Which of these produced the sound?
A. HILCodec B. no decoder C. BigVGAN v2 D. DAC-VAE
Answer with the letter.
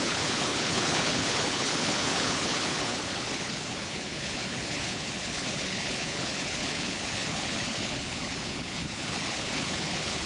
A